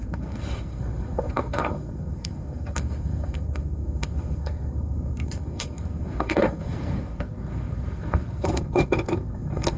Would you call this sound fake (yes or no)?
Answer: yes